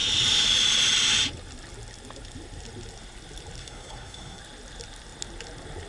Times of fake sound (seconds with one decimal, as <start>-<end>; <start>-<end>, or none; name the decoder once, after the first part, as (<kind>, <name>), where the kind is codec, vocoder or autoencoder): 3.6-4.4 (codec, SNAC)